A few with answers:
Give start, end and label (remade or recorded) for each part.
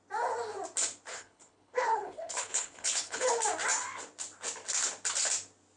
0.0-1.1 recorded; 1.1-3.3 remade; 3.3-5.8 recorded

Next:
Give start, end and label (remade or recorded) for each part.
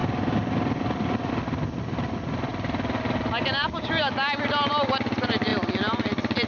0.0-6.5 recorded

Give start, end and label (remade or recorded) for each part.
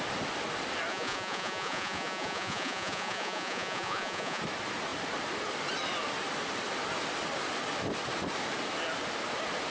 0.0-0.9 recorded; 0.9-4.4 remade; 4.4-9.7 recorded